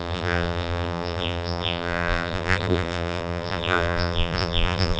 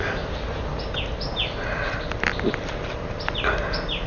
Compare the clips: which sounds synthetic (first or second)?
first